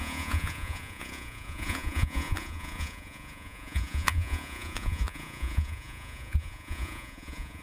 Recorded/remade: remade